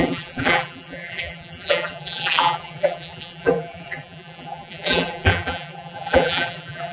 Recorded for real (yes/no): no